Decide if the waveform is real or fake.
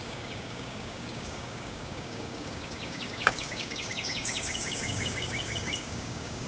fake